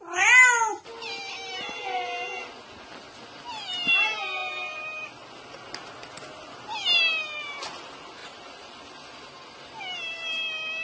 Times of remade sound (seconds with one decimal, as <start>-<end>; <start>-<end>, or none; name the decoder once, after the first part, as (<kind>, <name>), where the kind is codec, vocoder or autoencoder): 8.2-8.8 (vocoder, BigVGAN v2)